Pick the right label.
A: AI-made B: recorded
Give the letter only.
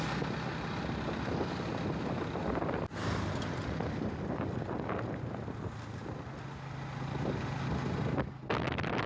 B